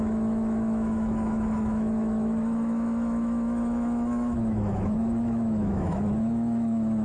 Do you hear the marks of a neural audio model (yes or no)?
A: yes